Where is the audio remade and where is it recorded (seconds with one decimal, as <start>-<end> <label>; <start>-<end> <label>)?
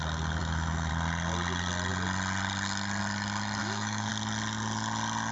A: 0.0-0.4 recorded; 0.4-0.9 remade; 0.9-3.6 recorded; 3.6-4.1 remade; 4.1-5.3 recorded